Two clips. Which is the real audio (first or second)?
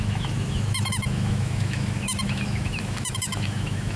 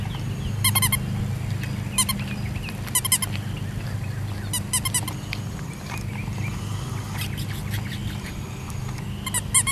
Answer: second